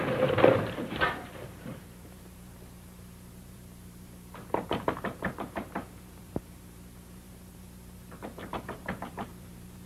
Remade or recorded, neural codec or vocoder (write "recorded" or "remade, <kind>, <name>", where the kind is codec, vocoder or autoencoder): remade, vocoder, BigVGAN v2